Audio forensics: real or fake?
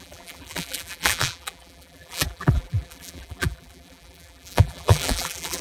fake